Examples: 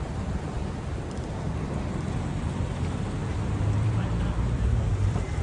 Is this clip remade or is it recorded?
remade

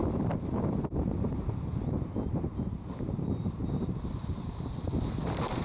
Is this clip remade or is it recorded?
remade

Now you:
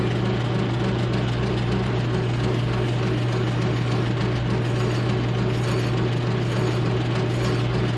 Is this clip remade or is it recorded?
recorded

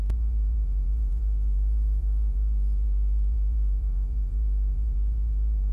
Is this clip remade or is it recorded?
remade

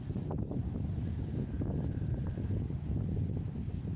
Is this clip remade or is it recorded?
recorded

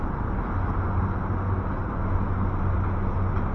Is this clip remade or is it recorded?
recorded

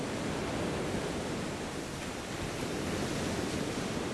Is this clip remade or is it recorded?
remade